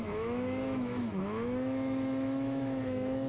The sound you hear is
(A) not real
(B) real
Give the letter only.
A